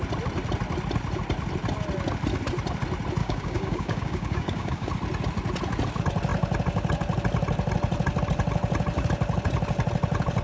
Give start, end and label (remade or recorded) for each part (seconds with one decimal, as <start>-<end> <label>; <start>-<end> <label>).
0.0-3.2 recorded; 3.2-4.9 remade; 4.9-10.4 recorded